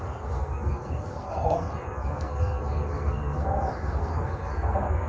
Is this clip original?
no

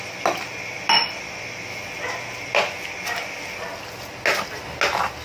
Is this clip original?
yes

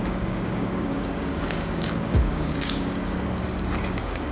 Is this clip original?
no